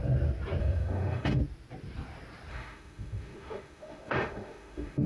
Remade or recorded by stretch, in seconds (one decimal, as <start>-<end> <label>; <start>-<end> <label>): 0.0-0.6 recorded; 0.6-1.4 remade; 1.4-2.5 recorded; 2.5-5.1 remade